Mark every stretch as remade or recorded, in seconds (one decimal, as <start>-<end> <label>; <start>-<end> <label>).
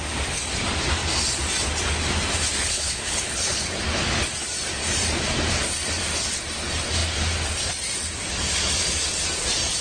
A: 0.0-2.5 recorded; 2.5-3.8 remade; 3.8-9.8 recorded